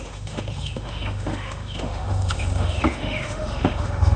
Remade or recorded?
remade